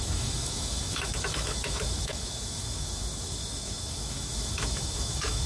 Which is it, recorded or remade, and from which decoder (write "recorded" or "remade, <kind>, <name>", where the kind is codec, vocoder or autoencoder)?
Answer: remade, autoencoder, DAC-VAE